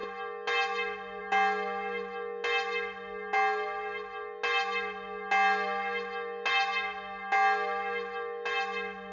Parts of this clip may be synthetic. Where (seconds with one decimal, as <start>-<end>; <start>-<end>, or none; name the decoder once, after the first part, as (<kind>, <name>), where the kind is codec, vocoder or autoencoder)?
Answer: none